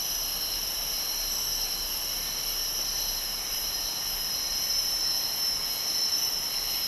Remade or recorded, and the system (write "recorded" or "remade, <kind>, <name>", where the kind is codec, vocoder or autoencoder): recorded